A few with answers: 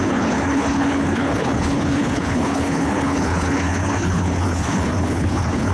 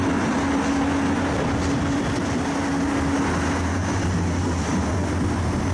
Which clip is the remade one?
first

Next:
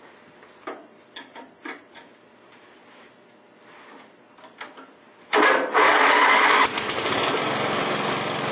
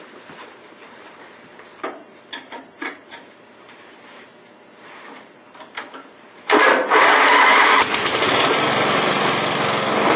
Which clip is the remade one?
second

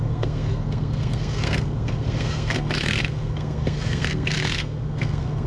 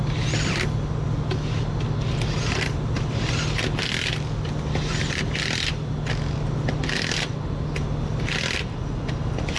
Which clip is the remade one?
first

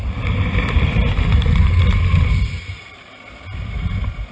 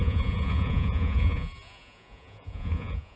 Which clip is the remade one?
second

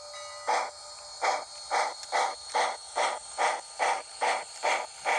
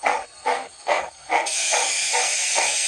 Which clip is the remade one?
second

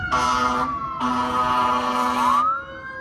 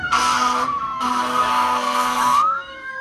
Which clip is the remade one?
second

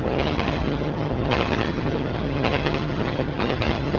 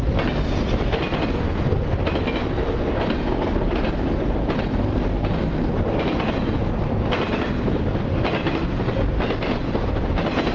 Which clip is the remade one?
first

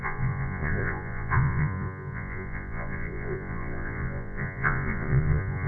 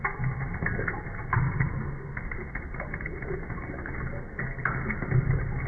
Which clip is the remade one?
first